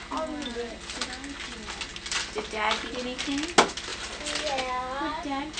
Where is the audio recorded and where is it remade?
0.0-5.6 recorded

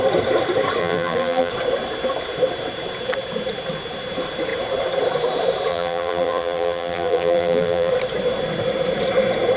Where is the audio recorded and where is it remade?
0.0-0.8 recorded; 0.8-1.5 remade; 1.5-5.7 recorded; 5.7-7.9 remade; 7.9-9.6 recorded

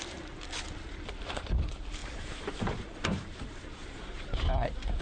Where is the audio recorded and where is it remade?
0.0-2.0 recorded; 2.0-4.2 remade; 4.2-5.0 recorded

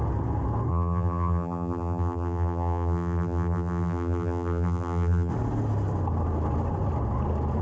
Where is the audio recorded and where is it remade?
0.0-0.7 recorded; 0.7-5.3 remade; 5.3-7.6 recorded